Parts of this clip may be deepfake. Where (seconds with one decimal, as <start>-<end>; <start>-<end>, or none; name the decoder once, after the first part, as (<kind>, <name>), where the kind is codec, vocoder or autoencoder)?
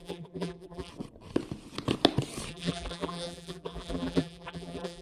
0.0-0.9 (vocoder, BigVGAN v2); 2.5-5.0